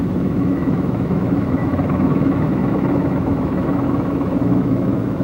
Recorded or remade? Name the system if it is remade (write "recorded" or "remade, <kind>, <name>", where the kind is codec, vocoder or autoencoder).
remade, autoencoder, DAC-VAE